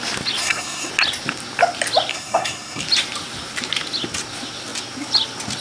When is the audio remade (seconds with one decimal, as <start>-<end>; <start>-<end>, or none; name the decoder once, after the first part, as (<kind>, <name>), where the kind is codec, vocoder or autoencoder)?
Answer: 0.4-0.9 (codec, SNAC); 2.1-2.8